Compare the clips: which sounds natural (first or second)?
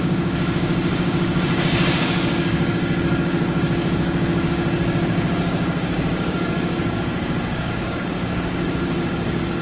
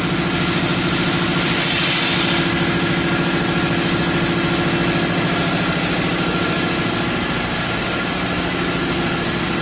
second